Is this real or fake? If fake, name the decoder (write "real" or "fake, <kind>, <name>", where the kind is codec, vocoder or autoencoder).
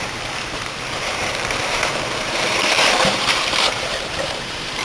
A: fake, vocoder, BigVGAN v2